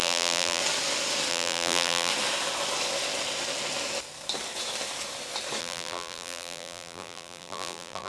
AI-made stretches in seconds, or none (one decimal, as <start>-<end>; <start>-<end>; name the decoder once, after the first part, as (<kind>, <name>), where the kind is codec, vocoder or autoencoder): 0.0-0.6 (vocoder, BigVGAN v2); 1.3-2.1; 5.6-8.1